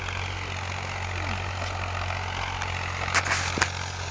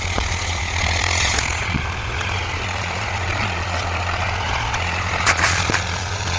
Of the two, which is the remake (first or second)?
second